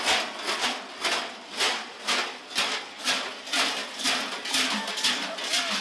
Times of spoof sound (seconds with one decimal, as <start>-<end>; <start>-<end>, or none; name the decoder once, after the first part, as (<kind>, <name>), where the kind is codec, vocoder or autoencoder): none